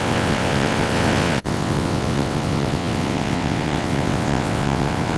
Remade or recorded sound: remade